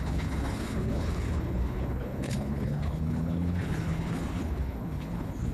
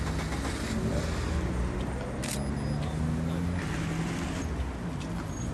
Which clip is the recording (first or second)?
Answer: second